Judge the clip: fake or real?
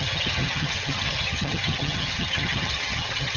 fake